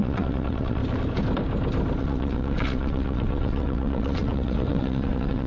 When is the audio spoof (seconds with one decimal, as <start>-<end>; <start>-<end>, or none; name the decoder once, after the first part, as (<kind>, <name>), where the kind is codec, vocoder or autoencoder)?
0.0-0.8 (vocoder, WaveNeXt); 2.0-5.5